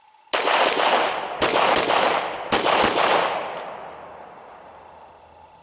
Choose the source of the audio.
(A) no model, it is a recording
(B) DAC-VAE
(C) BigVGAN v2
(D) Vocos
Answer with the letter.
A